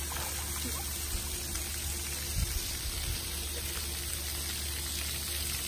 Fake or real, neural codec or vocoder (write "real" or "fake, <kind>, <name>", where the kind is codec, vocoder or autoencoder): real